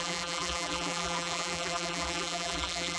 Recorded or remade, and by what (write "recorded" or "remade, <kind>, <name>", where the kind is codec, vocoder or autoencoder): remade, vocoder, BigVGAN v2